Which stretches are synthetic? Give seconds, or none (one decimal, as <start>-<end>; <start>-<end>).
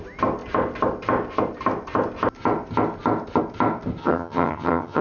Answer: 4.0-5.0